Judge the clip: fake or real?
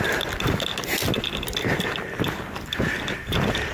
real